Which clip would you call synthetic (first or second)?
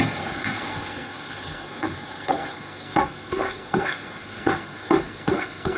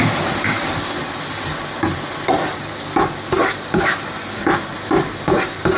first